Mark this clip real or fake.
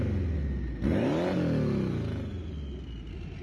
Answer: real